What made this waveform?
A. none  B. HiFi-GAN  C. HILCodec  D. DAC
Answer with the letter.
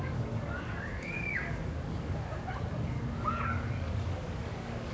D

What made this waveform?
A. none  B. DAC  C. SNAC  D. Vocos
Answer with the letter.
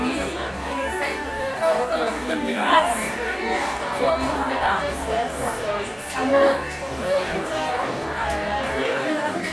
B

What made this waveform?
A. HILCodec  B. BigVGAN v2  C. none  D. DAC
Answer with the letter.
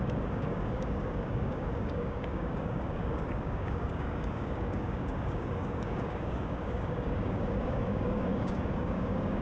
D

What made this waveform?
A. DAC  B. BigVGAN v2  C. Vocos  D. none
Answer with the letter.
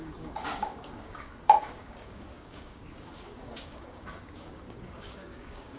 A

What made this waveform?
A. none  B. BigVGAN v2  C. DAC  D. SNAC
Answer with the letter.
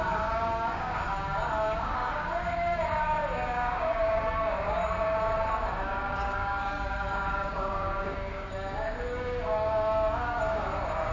C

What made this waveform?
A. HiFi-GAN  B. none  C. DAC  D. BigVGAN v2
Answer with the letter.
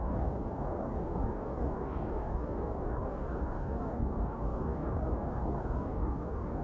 C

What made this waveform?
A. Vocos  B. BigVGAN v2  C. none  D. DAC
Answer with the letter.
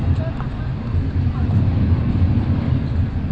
C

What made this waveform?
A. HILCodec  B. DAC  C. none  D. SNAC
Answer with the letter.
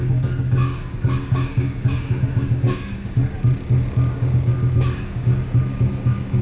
B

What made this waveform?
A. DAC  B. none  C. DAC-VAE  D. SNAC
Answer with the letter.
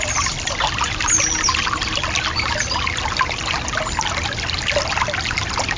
B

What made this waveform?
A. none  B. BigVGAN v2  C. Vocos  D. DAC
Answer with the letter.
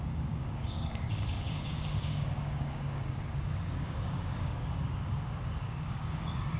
D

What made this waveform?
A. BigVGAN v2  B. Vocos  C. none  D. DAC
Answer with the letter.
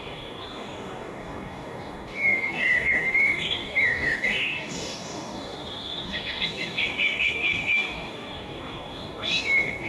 D